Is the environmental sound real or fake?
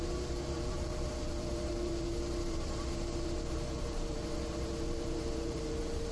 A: fake